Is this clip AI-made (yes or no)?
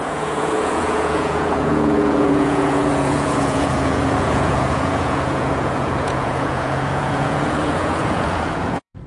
yes